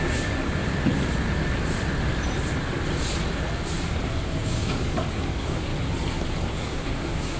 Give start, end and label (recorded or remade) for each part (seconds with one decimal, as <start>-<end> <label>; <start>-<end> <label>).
0.0-0.6 remade; 0.6-4.1 recorded; 4.1-5.7 remade; 5.7-6.4 recorded; 6.4-7.4 remade